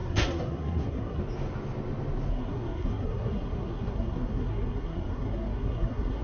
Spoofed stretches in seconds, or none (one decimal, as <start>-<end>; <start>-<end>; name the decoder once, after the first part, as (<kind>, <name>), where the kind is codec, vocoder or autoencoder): 0.0-1.2 (codec, SNAC); 2.3-6.2

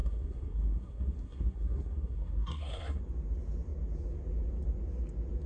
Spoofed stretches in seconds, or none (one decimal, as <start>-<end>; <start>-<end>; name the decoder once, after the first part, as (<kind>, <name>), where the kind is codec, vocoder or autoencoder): 0.0-3.0 (codec, SNAC)

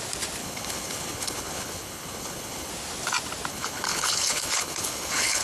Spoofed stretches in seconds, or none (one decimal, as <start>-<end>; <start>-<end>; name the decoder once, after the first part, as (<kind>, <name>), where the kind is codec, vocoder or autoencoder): 0.4-2.7 (codec, HILCodec); 3.5-5.4

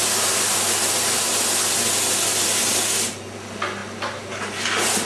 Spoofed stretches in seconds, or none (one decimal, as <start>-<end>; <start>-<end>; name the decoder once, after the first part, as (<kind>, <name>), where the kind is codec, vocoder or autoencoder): none

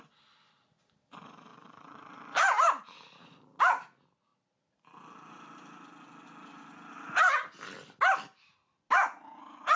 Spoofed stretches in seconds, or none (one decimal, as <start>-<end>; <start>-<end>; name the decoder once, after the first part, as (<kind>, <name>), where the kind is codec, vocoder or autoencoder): 1.5-3.6 (vocoder, BigVGAN v2)

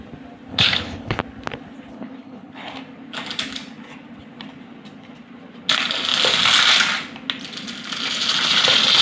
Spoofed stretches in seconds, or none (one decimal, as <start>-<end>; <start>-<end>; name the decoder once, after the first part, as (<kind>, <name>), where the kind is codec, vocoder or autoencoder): 0.5-1.2 (codec, HILCodec); 1.9-2.7

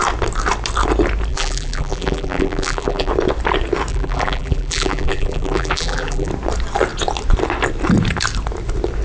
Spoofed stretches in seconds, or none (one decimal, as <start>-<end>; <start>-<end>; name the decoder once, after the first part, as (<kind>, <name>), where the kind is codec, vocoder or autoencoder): 1.3-3.1 (vocoder, BigVGAN v2); 3.9-6.3

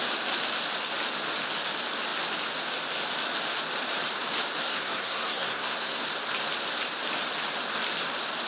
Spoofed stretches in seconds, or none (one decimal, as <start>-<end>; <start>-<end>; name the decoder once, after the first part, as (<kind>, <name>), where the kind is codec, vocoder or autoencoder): 4.6-6.0 (codec, SNAC)